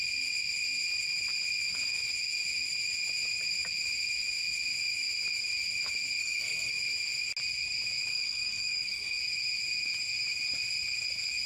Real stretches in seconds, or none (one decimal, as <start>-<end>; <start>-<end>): 0.0-6.2; 6.7-8.1; 9.2-11.5